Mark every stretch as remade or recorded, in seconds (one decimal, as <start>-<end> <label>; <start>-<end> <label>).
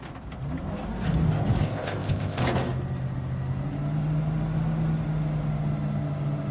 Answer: 0.0-1.6 recorded; 1.6-2.4 remade; 2.4-6.5 recorded